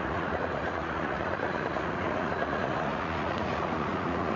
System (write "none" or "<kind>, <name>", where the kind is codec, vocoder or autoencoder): vocoder, Vocos